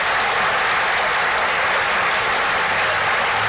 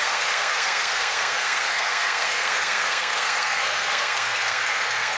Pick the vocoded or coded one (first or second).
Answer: second